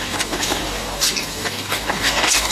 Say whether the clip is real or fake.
fake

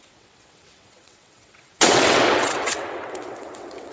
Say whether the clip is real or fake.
fake